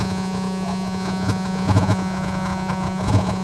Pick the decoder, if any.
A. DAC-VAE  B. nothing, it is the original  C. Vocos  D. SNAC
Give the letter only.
C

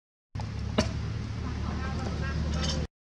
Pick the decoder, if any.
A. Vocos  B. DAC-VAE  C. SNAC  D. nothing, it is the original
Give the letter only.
D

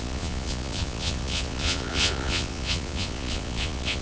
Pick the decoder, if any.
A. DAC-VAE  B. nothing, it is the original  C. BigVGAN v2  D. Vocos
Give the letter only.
D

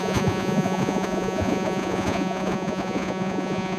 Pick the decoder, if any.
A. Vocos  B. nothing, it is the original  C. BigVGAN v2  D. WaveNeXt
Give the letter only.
A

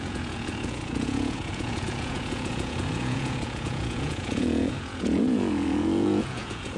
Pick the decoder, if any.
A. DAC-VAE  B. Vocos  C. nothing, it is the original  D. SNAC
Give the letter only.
B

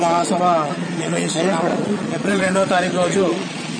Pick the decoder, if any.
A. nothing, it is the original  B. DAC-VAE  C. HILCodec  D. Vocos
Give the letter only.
D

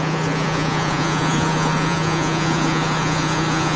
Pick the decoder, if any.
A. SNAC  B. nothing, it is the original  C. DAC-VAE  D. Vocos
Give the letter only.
D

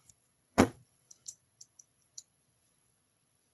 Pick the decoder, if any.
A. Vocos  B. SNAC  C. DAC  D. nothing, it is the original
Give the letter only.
A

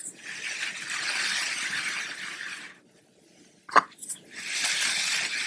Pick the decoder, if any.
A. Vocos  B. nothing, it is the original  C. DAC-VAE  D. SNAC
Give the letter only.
B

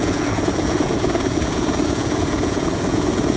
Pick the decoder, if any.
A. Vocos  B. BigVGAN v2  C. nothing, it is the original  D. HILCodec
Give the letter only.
A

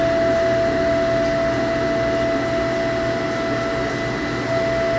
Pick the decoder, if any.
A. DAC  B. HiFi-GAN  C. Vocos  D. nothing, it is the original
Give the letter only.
D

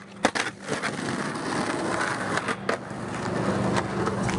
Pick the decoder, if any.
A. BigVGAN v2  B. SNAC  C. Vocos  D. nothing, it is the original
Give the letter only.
D